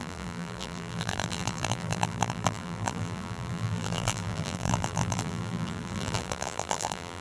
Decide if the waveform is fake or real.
fake